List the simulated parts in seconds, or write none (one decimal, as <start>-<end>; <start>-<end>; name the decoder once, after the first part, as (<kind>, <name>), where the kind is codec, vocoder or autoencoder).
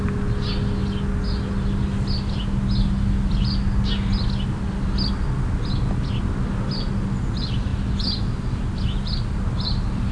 none